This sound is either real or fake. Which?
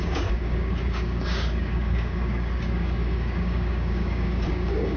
fake